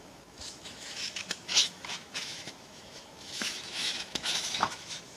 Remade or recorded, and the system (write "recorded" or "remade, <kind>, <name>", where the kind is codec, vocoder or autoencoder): remade, autoencoder, DAC-VAE